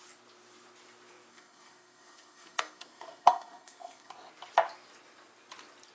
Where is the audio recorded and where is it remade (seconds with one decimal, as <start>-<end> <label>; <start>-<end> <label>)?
0.0-1.3 recorded; 1.3-4.1 remade; 4.1-5.9 recorded